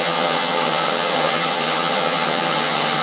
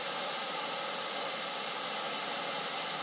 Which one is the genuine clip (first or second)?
second